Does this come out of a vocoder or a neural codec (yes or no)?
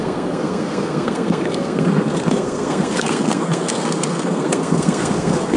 yes